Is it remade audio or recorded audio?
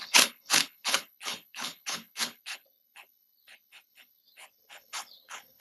remade